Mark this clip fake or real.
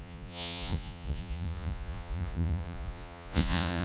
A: fake